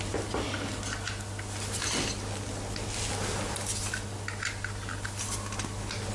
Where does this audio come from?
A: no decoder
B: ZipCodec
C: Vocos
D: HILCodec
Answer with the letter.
A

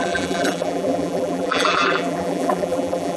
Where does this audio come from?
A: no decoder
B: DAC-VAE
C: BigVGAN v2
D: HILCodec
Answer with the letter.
C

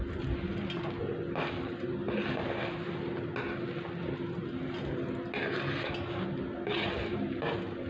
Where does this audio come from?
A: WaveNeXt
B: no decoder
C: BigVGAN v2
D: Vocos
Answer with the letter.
B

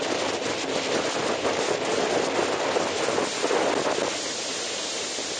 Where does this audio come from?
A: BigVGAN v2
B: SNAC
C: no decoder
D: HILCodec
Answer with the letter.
C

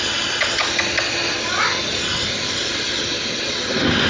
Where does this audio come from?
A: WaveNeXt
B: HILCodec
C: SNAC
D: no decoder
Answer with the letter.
D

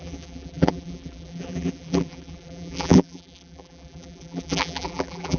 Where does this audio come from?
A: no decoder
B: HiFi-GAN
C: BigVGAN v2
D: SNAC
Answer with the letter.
C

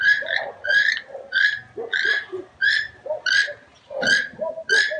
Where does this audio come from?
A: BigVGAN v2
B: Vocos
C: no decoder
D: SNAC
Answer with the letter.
C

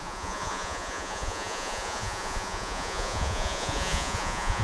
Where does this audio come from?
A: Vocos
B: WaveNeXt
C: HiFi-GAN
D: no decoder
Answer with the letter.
A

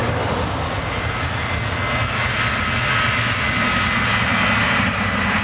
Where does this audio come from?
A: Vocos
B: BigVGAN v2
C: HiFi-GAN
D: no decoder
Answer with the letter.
D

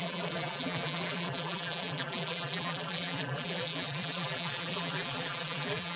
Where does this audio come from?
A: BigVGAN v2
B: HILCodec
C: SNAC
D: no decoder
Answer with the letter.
A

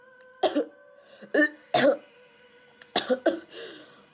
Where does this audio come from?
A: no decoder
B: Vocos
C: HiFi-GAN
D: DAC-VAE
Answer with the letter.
A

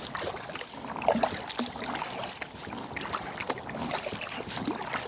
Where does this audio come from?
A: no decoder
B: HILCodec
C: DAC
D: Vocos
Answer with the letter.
A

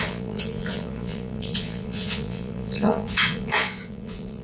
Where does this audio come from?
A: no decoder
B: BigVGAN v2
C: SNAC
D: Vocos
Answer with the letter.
D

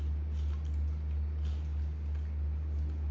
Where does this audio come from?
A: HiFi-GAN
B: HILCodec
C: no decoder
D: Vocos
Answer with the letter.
C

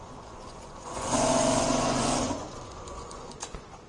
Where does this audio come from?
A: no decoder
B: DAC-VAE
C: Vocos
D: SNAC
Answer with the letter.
C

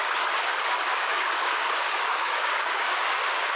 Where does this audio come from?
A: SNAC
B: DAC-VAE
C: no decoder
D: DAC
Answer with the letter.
D